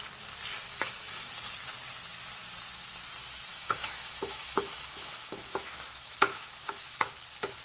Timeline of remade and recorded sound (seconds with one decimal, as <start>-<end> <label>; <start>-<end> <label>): 0.0-0.7 recorded; 0.7-1.3 remade; 1.3-3.5 recorded; 3.5-7.1 remade; 7.1-7.6 recorded